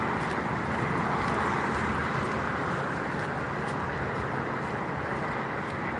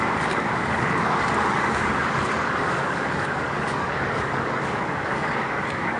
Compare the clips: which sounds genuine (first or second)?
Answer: first